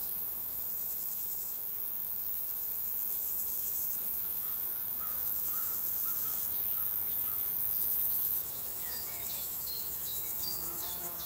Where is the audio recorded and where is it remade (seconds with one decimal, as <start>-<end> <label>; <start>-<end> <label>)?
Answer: 0.0-11.3 remade